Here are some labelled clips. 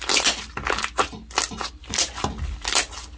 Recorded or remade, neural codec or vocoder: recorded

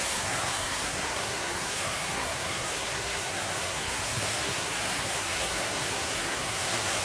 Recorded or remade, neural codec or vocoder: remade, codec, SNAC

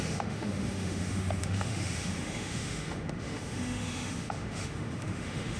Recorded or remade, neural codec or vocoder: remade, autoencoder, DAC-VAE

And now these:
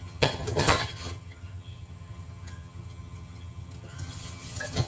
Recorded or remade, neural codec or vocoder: remade, vocoder, HiFi-GAN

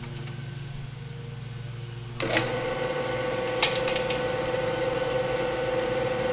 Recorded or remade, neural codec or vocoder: recorded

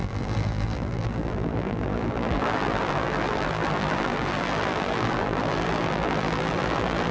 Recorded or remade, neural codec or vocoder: remade, vocoder, BigVGAN v2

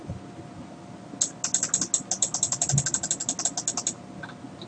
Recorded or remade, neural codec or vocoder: recorded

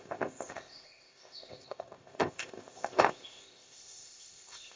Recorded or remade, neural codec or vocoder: remade, codec, ZipCodec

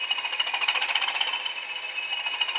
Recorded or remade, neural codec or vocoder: recorded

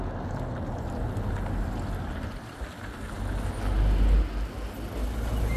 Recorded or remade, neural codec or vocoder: recorded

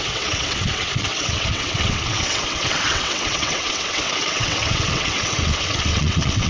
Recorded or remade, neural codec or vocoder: remade, vocoder, WaveNeXt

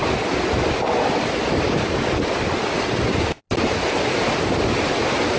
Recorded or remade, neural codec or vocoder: recorded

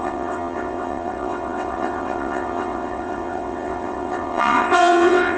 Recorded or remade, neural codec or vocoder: remade, vocoder, WaveNeXt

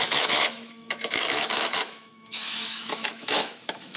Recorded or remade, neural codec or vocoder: remade, autoencoder, DAC-VAE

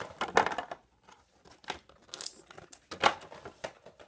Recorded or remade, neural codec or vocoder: recorded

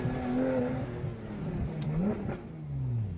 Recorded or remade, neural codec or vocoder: recorded